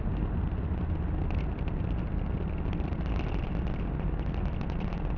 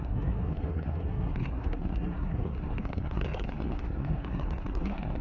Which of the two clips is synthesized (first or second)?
second